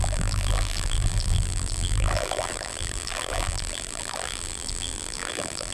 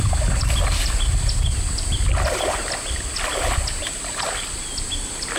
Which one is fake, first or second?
first